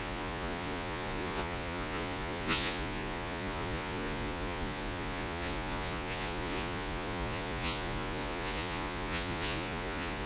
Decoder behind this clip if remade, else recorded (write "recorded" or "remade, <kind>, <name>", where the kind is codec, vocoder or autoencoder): remade, vocoder, Vocos